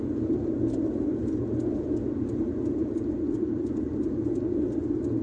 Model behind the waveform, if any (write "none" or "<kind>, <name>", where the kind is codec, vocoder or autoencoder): vocoder, BigVGAN v2